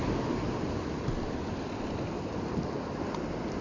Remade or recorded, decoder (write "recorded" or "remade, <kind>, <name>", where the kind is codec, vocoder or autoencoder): recorded